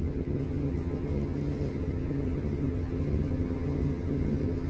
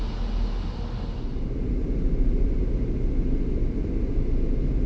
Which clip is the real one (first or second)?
second